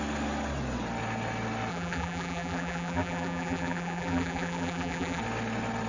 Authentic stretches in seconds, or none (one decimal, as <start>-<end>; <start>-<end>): 0.0-1.7; 5.2-5.9